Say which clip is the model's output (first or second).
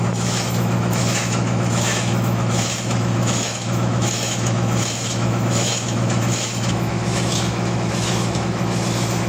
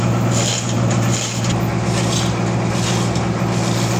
first